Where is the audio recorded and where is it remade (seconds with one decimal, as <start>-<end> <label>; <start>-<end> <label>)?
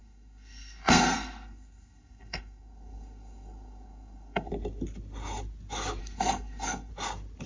0.0-4.5 remade; 4.5-6.0 recorded; 6.0-6.9 remade; 6.9-7.5 recorded